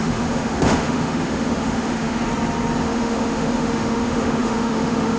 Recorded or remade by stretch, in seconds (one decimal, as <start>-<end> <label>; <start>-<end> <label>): 0.0-2.2 remade; 2.2-2.8 recorded; 2.8-5.2 remade